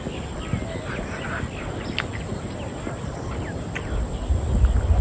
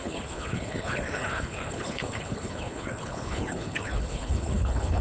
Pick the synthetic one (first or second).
second